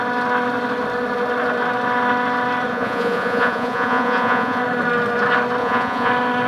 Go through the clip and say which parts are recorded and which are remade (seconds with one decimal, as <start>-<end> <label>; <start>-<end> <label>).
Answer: 0.0-2.7 recorded; 2.7-4.6 remade; 4.6-5.6 recorded; 5.6-6.1 remade; 6.1-6.5 recorded